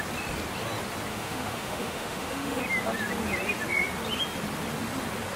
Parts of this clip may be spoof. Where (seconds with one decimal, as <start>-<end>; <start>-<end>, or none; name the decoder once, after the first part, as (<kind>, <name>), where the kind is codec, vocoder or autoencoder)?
1.1-2.6 (autoencoder, DAC-VAE)